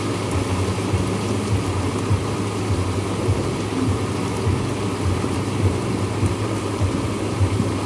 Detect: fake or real real